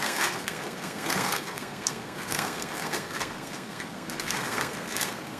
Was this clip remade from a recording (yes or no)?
yes